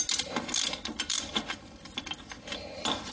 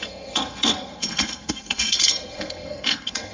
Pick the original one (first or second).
first